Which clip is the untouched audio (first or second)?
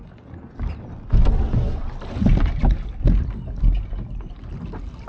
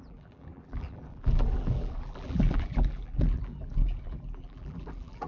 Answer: first